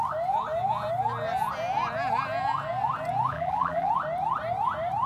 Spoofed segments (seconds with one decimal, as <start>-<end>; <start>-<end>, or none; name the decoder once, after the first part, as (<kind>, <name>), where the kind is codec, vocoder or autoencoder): 3.3-3.9 (vocoder, BigVGAN v2)